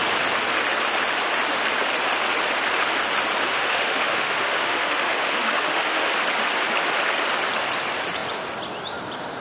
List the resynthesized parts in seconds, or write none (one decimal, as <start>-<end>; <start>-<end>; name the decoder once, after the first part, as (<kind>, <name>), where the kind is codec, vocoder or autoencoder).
3.5-6.1 (autoencoder, DAC-VAE)